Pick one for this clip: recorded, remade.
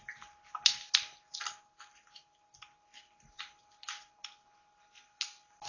recorded